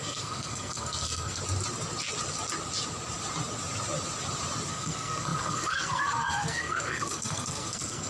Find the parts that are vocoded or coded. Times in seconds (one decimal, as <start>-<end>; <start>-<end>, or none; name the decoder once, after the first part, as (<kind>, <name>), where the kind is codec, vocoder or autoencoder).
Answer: 0.0-1.4 (codec, SNAC); 4.7-8.1